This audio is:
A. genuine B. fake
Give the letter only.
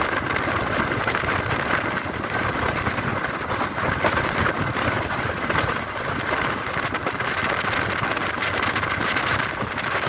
A